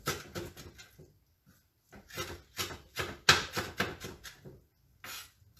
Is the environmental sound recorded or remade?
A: recorded